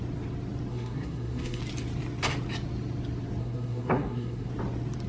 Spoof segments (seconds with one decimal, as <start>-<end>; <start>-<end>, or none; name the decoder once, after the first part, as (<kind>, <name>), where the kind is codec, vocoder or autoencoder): 0.7-1.6 (codec, SNAC); 3.4-4.5